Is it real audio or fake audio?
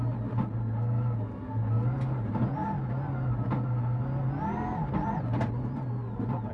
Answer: real